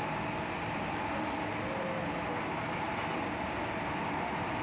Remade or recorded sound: recorded